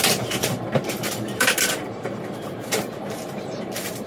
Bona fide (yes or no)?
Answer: no